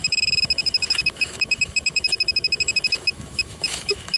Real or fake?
fake